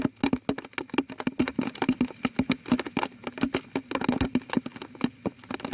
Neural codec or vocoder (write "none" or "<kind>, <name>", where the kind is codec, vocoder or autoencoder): none